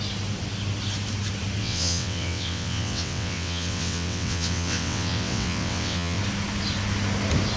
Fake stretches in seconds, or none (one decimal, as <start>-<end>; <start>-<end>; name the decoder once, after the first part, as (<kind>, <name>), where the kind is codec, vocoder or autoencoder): 1.6-6.2 (vocoder, WaveNeXt)